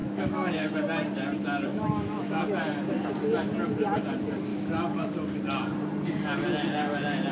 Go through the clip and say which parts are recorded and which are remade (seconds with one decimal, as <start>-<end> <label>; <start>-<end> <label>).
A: 0.0-0.7 remade; 0.7-1.7 recorded; 1.7-2.5 remade; 2.5-4.5 recorded; 4.5-5.1 remade; 5.1-7.3 recorded